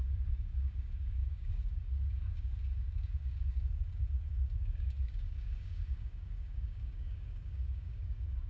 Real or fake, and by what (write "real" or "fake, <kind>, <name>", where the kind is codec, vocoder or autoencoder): fake, codec, DAC